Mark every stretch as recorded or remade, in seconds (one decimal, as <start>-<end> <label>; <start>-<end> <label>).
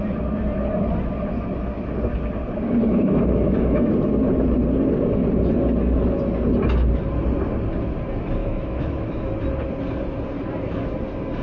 0.0-2.8 recorded; 2.8-3.9 remade; 3.9-8.4 recorded; 8.4-9.3 remade; 9.3-11.4 recorded